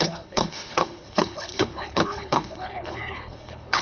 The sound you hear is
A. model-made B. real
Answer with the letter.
A